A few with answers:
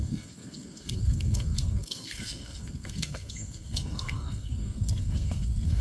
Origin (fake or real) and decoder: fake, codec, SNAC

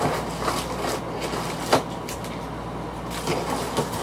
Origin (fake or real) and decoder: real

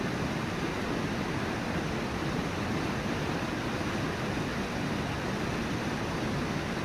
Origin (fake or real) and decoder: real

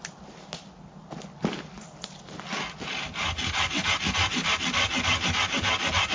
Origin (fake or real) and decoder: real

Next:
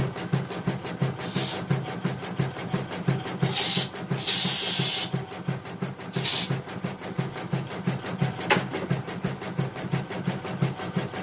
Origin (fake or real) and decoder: real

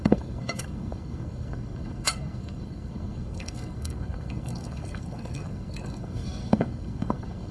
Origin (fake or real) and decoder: fake, codec, SNAC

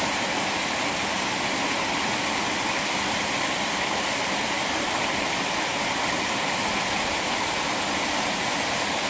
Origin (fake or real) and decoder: real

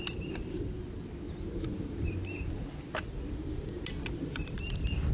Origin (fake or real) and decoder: real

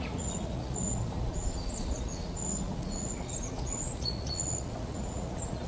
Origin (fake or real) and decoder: fake, vocoder, Vocos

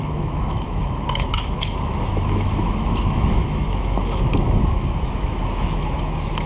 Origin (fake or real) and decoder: fake, autoencoder, DAC-VAE